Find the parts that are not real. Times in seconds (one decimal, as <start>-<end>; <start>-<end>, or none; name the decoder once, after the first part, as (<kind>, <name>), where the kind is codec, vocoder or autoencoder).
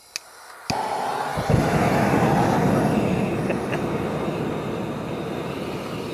none